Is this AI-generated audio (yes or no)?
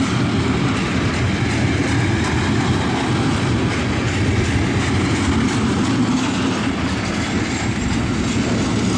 no